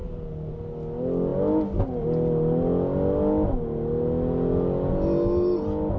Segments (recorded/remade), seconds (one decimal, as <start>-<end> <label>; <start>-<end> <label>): 0.0-6.0 recorded